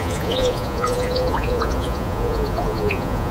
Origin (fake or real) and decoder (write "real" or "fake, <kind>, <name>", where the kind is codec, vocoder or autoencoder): fake, vocoder, Vocos